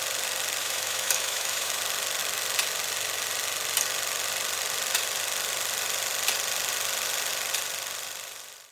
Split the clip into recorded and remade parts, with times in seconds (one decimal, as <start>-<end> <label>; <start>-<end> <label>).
0.0-0.6 recorded; 0.6-1.8 remade; 1.8-8.7 recorded